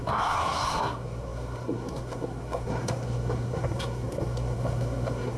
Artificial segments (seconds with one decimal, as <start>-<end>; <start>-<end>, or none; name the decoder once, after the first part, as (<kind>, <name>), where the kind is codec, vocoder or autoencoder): 0.0-5.4 (codec, SNAC)